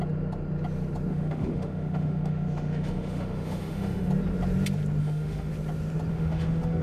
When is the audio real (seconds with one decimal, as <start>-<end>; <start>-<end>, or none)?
0.0-1.1; 4.1-5.0; 5.5-6.1